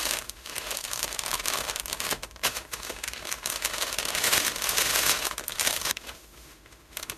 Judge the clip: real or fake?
fake